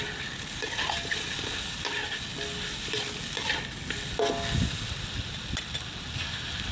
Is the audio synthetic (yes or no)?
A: no